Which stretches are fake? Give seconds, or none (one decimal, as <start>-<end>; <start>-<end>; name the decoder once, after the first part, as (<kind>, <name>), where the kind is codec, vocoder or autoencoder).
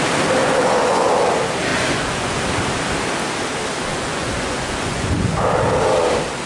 0.4-1.1 (vocoder, Vocos); 1.7-2.4; 3.9-5.4